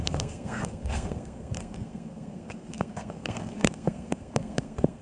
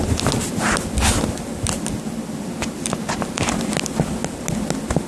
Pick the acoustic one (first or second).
second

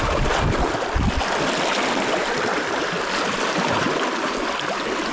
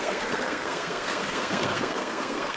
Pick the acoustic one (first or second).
first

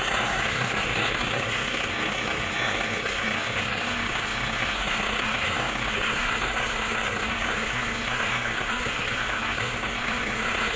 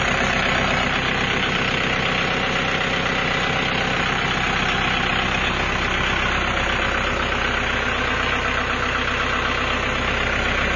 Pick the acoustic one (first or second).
second